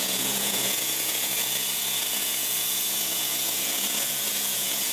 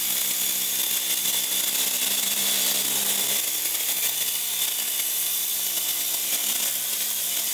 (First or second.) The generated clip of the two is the first